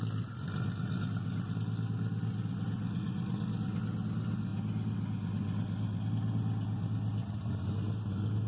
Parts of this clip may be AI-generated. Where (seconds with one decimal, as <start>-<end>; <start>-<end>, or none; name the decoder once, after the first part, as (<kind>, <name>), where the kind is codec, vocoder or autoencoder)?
none

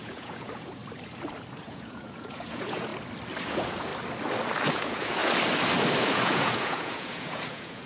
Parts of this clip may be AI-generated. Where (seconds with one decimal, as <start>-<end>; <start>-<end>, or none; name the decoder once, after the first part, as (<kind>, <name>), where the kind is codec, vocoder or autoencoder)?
0.0-0.8 (vocoder, Vocos); 1.6-2.9; 3.5-3.9; 4.7-5.2; 6.0-7.9

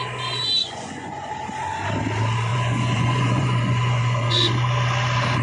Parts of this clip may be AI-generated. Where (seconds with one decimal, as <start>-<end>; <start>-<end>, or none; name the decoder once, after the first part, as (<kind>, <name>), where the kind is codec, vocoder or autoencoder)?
0.6-1.3 (vocoder, Vocos); 2.5-4.5

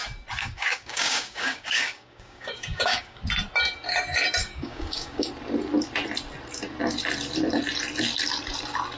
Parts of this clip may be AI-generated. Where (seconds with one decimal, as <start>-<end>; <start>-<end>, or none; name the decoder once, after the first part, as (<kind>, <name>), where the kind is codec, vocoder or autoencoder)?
0.4-3.2 (codec, DAC); 4.4-5.3

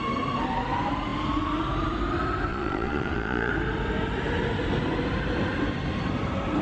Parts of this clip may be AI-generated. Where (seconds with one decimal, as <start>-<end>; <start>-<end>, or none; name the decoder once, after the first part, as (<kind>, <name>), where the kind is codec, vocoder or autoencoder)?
2.5-3.5 (vocoder, Vocos)

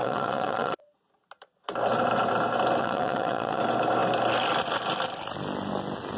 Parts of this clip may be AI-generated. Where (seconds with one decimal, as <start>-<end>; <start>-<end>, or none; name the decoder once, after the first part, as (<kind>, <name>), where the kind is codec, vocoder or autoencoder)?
0.0-0.8 (vocoder, WaveNeXt); 2.8-3.6

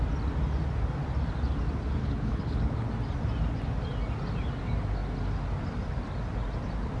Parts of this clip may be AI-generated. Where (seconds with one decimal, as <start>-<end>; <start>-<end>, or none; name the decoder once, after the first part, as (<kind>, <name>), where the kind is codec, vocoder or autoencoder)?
2.0-2.9 (codec, HILCodec)